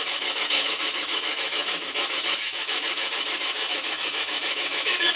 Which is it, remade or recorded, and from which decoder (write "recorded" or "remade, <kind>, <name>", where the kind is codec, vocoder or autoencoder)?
remade, autoencoder, DAC-VAE